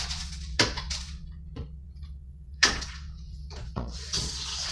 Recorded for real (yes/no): no